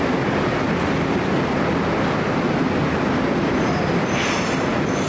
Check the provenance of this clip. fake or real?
real